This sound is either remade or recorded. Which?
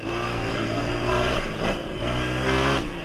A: remade